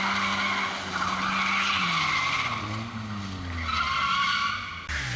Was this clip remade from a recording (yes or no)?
no